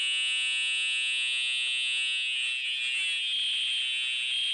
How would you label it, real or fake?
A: real